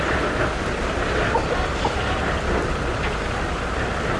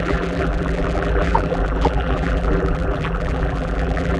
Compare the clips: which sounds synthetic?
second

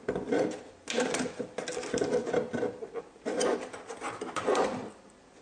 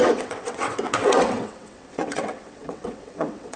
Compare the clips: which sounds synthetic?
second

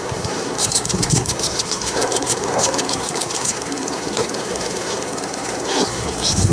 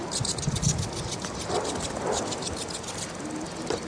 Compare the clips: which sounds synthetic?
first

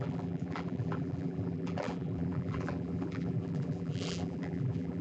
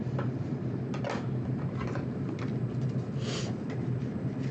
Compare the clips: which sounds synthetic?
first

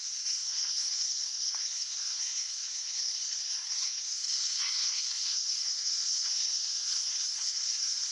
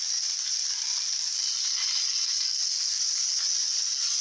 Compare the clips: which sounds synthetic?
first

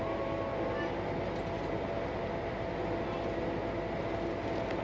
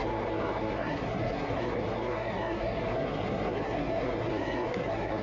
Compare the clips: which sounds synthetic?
second